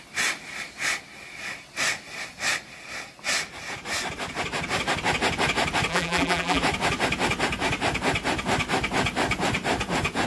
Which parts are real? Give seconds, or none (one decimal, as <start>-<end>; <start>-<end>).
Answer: 0.0-5.9; 6.6-10.3